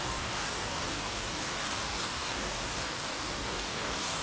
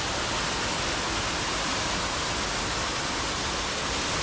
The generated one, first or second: first